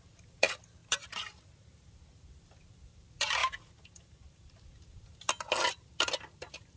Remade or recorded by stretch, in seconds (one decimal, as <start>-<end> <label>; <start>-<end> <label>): 0.0-6.8 recorded